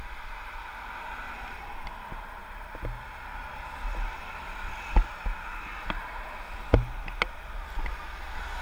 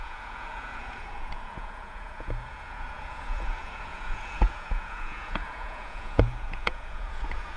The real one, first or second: first